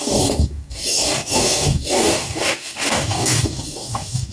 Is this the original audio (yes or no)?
no